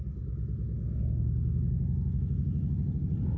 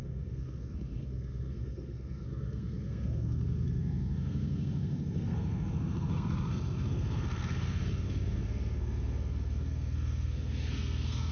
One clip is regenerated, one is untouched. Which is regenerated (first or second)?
second